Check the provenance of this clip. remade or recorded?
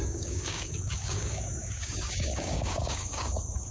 remade